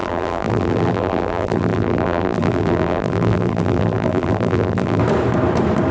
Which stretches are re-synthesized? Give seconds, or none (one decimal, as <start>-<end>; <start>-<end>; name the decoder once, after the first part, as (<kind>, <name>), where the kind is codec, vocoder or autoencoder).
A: 0.0-5.0 (vocoder, BigVGAN v2)